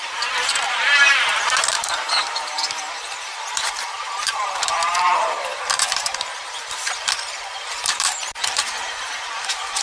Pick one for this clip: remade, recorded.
remade